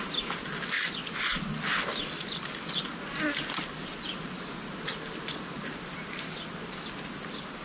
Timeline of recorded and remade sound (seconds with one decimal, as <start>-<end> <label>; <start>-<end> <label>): 0.0-7.6 recorded